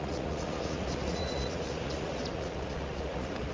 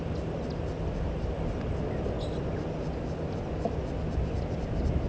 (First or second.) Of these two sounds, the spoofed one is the first